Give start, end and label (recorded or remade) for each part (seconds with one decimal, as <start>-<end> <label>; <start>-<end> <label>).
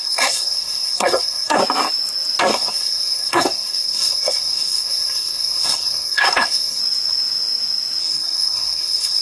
0.0-1.6 remade; 1.6-2.5 recorded; 2.5-6.8 remade; 6.8-8.0 recorded; 8.0-9.2 remade